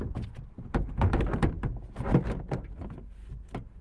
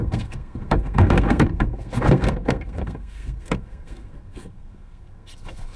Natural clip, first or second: first